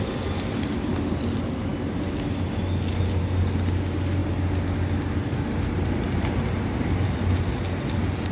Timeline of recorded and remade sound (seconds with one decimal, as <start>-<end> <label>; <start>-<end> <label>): 0.0-8.3 recorded